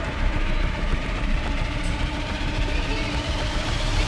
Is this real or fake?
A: fake